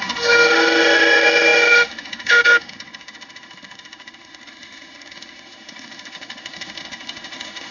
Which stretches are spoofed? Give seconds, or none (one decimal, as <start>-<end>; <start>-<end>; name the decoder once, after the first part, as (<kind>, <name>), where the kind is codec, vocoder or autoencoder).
0.0-7.7 (autoencoder, DAC-VAE)